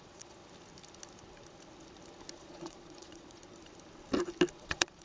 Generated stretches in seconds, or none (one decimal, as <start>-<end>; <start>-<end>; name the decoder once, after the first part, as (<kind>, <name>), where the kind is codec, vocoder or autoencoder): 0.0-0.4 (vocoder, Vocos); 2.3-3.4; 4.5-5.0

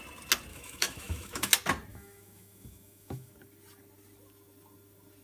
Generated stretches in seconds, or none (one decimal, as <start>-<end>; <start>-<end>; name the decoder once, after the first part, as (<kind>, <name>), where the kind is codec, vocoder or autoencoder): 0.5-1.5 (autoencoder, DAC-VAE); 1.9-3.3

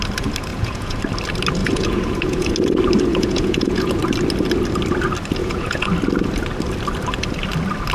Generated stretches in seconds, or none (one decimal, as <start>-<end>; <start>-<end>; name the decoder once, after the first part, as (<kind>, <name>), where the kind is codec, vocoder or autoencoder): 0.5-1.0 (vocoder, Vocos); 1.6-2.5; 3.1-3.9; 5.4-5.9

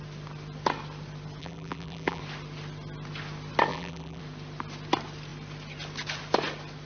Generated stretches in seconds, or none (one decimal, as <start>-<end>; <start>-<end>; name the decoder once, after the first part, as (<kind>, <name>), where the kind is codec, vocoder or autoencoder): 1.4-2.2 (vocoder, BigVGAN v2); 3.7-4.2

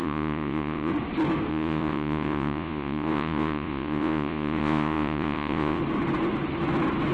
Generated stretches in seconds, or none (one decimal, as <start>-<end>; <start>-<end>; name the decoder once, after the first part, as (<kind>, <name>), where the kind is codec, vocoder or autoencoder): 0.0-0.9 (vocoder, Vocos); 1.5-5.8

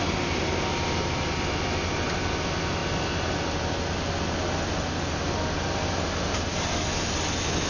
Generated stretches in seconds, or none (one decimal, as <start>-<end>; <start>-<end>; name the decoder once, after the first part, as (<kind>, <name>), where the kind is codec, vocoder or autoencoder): none

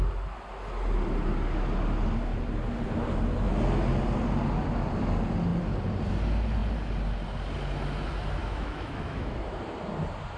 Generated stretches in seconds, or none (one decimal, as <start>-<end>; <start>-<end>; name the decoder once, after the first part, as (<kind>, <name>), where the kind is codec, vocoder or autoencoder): 8.4-9.6 (autoencoder, DAC-VAE)

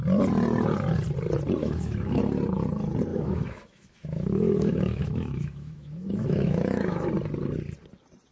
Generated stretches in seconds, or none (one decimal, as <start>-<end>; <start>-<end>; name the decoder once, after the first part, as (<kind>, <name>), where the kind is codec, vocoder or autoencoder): 1.6-2.2 (autoencoder, DAC-VAE); 3.1-7.1